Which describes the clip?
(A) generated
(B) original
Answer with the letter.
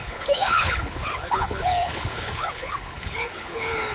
A